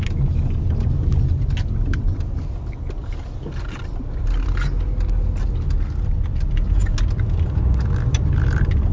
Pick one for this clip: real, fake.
real